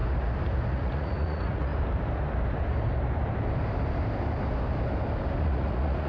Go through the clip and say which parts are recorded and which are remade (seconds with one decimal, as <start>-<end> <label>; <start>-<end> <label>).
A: 0.0-0.7 recorded; 0.7-1.7 remade; 1.7-5.4 recorded; 5.4-6.1 remade